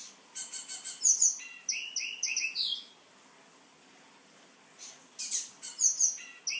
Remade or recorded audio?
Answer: recorded